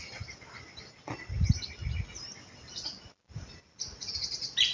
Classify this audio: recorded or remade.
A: recorded